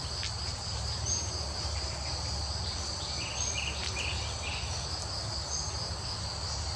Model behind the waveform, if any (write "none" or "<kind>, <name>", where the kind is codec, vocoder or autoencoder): none